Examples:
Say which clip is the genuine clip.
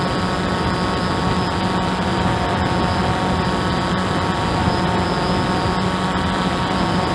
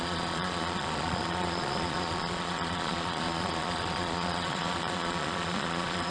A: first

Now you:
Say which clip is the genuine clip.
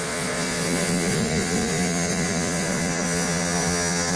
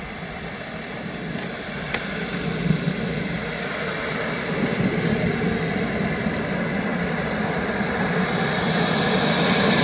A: second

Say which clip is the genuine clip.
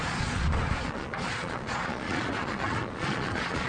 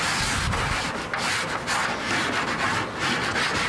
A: second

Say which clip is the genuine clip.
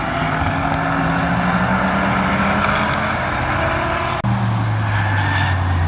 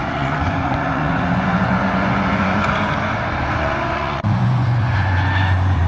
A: first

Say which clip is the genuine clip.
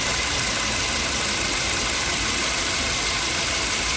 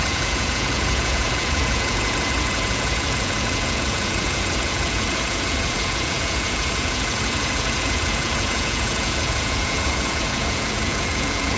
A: first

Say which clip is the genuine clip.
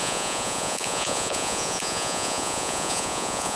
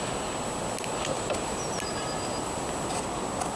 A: second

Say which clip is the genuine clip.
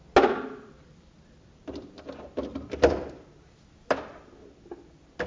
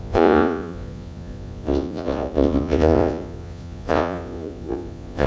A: first